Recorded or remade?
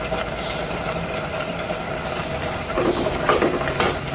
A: recorded